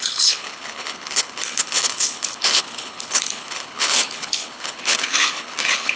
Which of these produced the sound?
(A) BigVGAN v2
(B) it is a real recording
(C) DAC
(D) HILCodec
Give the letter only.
D